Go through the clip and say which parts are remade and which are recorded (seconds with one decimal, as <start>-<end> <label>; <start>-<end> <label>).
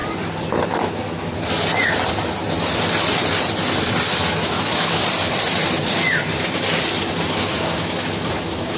0.0-0.7 recorded; 0.7-1.3 remade; 1.3-4.2 recorded; 4.2-5.0 remade; 5.0-7.3 recorded; 7.3-8.8 remade